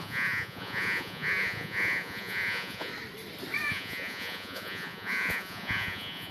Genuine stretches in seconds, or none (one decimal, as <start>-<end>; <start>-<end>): 2.9-3.7